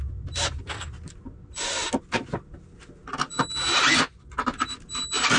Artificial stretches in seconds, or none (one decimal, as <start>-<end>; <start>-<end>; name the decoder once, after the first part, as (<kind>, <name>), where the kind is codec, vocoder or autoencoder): none